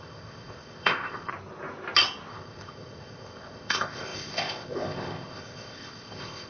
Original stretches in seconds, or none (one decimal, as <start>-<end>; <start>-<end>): 1.3-2.3